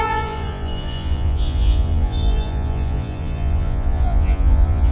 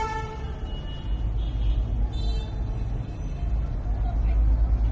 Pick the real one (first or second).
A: second